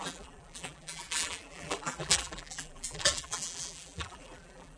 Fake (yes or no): yes